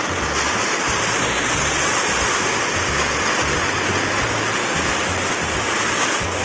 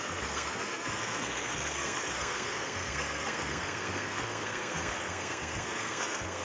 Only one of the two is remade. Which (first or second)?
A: second